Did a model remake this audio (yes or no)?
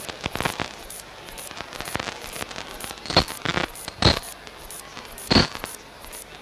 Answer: no